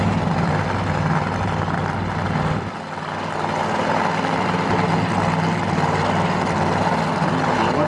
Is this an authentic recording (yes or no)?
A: yes